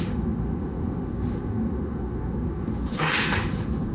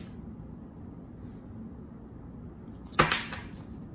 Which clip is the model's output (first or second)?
first